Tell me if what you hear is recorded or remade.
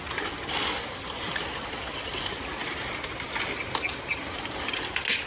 recorded